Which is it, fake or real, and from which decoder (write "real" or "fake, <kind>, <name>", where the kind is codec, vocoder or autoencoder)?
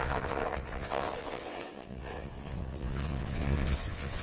fake, vocoder, WaveNeXt